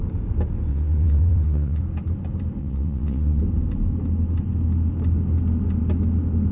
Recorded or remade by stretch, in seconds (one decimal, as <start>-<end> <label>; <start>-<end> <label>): 0.0-0.7 recorded; 0.7-1.8 remade; 1.8-2.6 recorded; 2.6-3.4 remade; 3.4-6.5 recorded